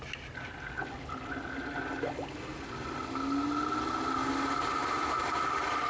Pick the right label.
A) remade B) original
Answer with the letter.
B